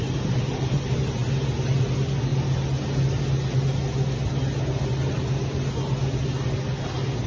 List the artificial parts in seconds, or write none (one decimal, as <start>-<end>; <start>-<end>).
none